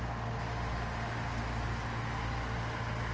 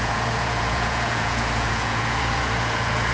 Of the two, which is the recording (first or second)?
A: first